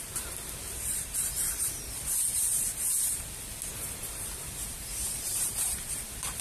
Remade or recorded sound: remade